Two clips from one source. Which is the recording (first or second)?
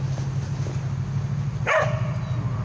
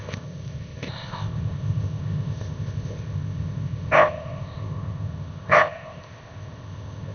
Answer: first